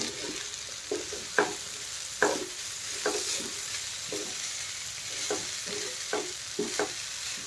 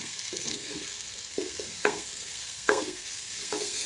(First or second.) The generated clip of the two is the second